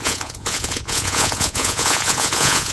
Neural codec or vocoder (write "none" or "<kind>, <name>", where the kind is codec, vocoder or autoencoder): vocoder, Vocos